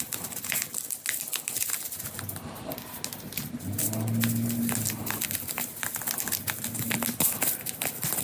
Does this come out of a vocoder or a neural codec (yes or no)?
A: no